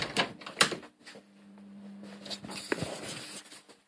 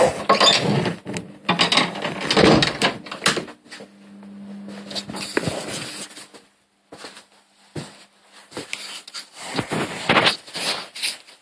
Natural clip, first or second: second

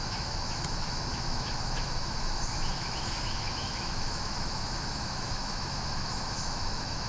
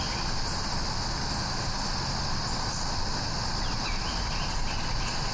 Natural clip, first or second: second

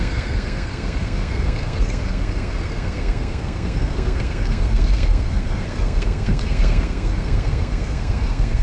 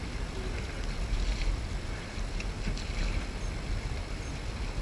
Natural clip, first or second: second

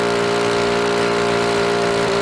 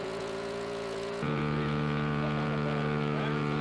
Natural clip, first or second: first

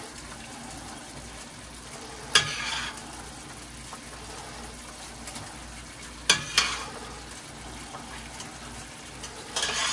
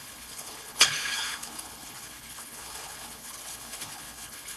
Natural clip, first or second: first